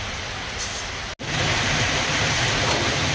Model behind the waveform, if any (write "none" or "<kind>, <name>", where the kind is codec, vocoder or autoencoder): none